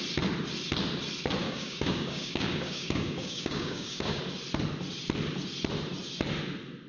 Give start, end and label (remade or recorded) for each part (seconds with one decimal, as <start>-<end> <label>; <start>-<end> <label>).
0.0-1.4 recorded; 1.4-4.2 remade; 4.2-6.9 recorded